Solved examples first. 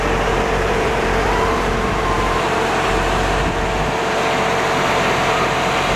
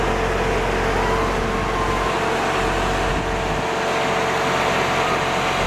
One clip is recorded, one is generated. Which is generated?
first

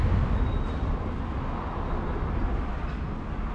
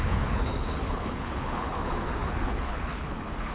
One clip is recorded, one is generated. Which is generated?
second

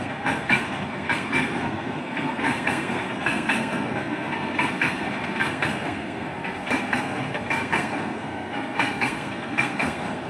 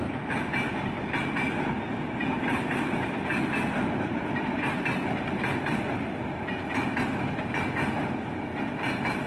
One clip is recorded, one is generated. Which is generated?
first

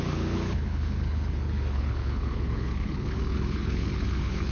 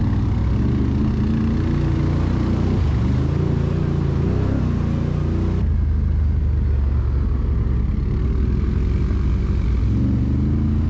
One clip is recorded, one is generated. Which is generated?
first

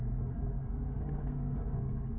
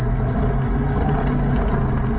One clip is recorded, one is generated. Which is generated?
first